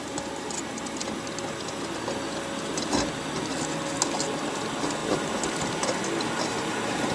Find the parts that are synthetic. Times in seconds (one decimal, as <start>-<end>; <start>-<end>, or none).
none